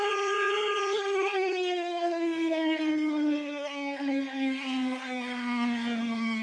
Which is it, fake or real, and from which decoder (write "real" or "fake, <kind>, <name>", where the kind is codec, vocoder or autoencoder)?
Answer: fake, codec, SNAC